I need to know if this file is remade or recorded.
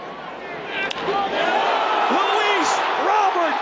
recorded